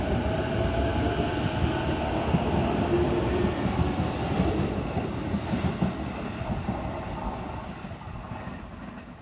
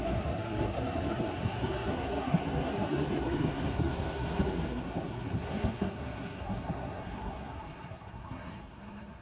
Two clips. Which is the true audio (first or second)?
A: first